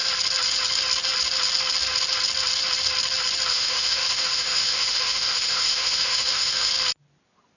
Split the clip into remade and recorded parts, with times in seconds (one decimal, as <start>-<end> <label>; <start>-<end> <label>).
0.0-3.5 recorded; 3.5-6.7 remade; 6.7-7.6 recorded

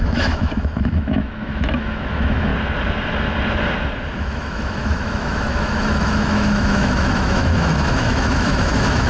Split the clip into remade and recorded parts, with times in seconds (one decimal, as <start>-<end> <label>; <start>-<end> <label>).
0.0-2.5 remade; 2.5-4.2 recorded; 4.2-9.1 remade

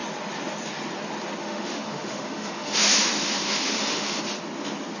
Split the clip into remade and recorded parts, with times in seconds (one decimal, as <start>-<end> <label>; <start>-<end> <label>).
0.0-1.4 recorded; 1.4-4.2 remade; 4.2-5.0 recorded